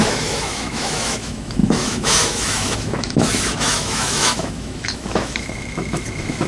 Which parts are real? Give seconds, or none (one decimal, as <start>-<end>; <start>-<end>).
none